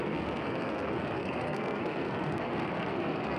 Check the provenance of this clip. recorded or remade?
remade